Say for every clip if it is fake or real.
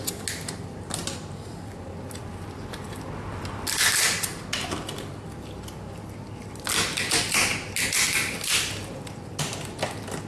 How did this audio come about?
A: real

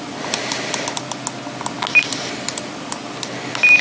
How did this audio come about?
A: real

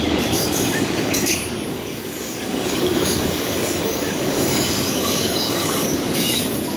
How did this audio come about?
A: fake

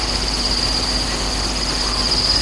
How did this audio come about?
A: real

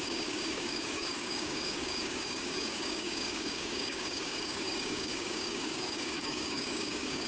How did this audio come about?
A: fake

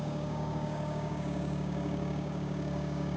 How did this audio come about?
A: fake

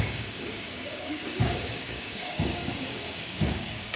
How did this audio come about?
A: fake